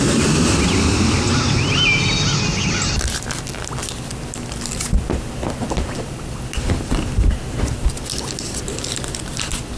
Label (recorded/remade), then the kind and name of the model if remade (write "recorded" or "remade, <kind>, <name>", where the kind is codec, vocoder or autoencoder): recorded